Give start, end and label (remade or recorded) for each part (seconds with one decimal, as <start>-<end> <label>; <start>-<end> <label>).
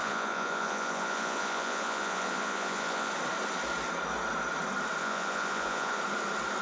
0.0-3.1 remade; 3.1-5.0 recorded; 5.0-6.0 remade; 6.0-6.6 recorded